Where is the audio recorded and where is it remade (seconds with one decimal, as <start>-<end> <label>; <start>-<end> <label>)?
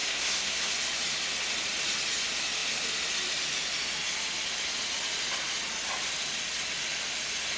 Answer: 0.0-0.7 remade; 0.7-7.6 recorded